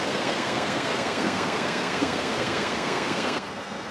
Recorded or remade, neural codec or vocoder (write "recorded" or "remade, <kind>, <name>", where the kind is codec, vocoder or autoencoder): remade, codec, SNAC